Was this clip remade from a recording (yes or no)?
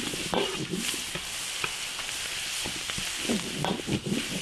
no